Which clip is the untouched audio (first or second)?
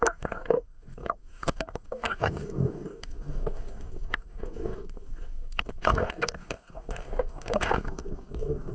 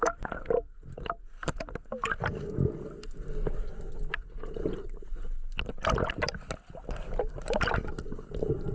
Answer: second